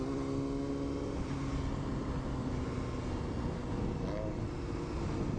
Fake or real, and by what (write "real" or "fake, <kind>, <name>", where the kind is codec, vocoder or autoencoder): real